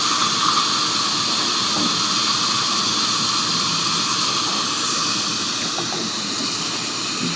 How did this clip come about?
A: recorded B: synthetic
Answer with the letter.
A